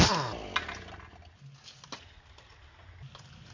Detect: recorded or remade recorded